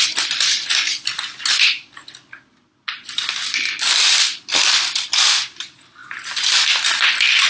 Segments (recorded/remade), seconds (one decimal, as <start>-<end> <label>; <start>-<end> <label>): 0.0-7.5 recorded